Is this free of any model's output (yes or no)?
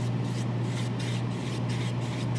yes